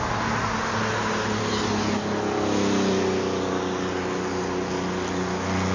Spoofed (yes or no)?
no